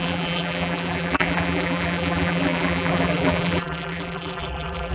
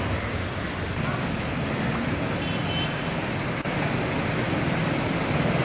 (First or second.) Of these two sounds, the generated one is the first